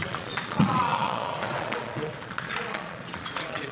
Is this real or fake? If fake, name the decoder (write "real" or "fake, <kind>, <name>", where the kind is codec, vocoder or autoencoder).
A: fake, vocoder, Vocos